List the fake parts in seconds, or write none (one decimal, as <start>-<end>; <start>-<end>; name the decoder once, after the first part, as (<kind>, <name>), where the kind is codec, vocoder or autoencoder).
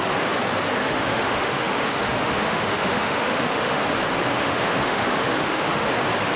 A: 0.8-3.8 (autoencoder, DAC-VAE); 4.3-5.9